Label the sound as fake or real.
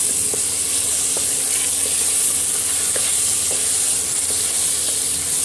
real